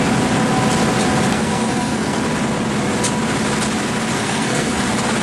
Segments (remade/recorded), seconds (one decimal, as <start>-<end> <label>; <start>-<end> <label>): 0.0-1.3 recorded; 1.3-2.2 remade; 2.2-4.1 recorded; 4.1-4.8 remade; 4.8-5.2 recorded